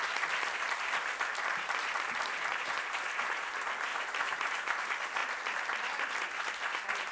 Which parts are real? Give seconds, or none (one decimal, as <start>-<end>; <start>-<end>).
0.0-2.5; 3.5-3.9; 4.8-7.1